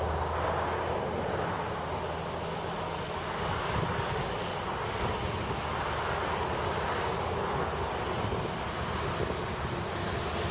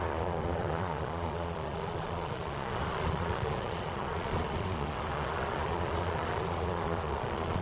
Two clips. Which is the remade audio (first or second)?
second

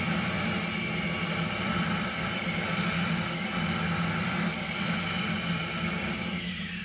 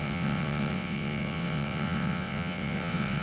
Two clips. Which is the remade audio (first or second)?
second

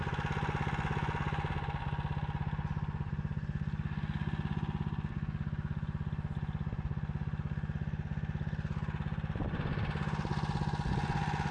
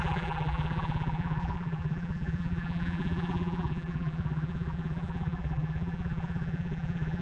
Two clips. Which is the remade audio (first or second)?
second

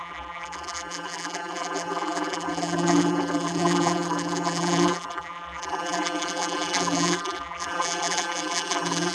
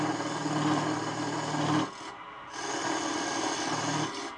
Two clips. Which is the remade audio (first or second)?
first